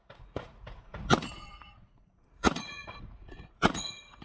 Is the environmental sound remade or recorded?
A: remade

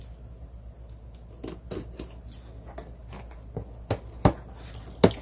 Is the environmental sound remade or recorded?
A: recorded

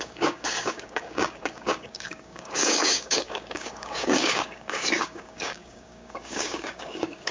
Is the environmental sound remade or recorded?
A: remade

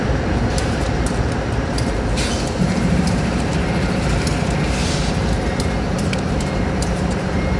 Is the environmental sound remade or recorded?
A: remade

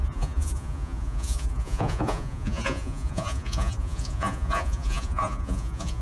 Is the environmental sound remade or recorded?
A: remade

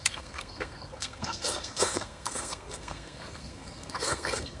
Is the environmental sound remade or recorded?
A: remade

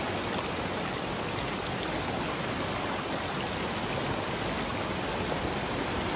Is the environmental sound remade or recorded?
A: recorded